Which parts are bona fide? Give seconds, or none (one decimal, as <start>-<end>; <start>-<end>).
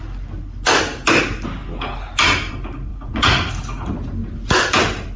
0.0-2.9; 3.5-5.2